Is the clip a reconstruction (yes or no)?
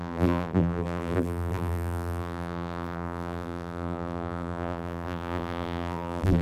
yes